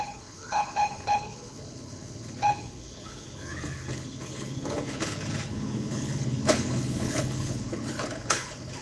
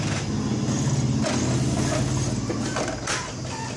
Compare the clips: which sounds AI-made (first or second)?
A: first